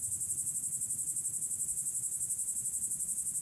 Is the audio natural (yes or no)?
yes